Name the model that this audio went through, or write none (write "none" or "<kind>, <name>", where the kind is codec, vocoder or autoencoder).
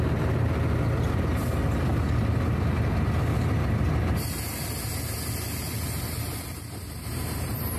none